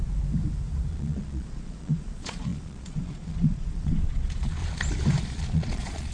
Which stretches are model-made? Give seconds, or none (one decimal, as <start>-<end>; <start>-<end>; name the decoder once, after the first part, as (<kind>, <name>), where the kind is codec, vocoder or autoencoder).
0.9-4.6 (vocoder, Vocos); 5.2-6.1